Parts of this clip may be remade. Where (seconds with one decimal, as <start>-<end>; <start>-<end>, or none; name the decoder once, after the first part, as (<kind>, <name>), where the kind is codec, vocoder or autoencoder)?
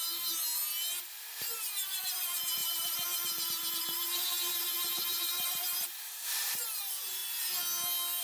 0.0-0.6 (vocoder, BigVGAN v2); 1.6-7.2